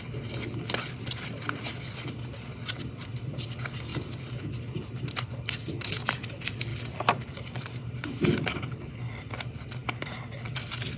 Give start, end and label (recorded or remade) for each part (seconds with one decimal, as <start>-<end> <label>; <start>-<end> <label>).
0.0-6.7 recorded; 6.7-8.9 remade; 8.9-11.0 recorded